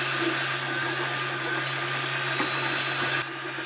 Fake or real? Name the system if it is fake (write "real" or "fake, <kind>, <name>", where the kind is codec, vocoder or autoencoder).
real